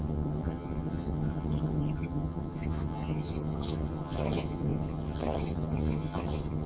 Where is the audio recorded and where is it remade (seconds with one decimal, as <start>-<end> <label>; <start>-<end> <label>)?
0.0-6.7 remade